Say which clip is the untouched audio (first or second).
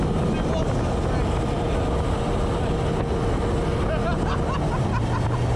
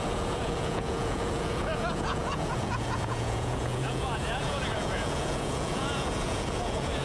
first